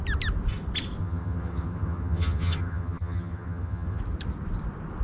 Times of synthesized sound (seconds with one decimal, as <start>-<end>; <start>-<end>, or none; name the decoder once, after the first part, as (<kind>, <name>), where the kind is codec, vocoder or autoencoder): 1.0-4.0 (vocoder, HiFi-GAN)